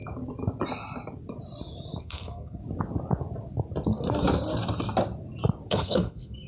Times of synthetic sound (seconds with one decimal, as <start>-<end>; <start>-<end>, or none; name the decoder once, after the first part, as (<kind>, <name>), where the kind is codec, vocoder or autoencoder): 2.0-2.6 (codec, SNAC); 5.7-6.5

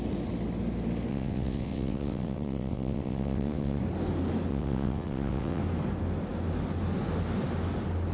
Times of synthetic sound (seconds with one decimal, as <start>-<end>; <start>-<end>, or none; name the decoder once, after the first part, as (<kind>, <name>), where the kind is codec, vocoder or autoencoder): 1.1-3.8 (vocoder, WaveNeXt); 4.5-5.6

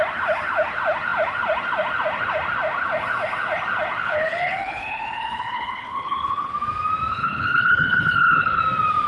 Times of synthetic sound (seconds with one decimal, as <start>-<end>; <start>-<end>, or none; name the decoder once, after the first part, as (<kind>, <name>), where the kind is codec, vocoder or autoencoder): 4.0-6.5 (codec, HILCodec); 7.1-8.6

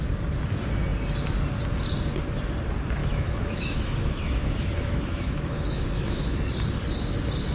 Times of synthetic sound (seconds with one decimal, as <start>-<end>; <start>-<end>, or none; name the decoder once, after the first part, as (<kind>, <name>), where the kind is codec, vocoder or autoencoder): 3.0-6.5 (autoencoder, DAC-VAE)